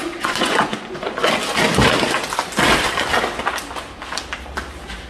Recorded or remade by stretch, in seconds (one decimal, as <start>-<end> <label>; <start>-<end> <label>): 0.0-1.3 remade; 1.3-5.1 recorded